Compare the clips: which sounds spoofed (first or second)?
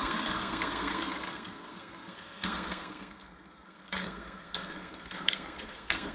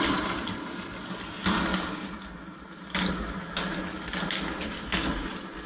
first